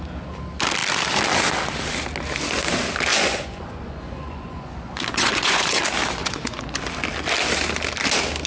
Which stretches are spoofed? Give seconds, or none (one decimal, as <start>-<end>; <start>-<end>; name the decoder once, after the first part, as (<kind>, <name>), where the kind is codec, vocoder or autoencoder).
3.1-5.8 (vocoder, Vocos); 6.2-6.8